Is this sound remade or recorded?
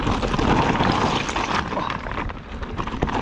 recorded